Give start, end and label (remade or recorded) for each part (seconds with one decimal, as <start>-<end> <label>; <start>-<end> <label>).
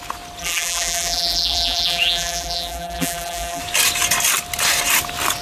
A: 0.0-0.4 recorded; 0.4-3.6 remade; 3.6-5.4 recorded